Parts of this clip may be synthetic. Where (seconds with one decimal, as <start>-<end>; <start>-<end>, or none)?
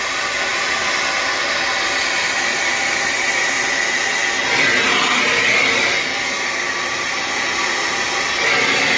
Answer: none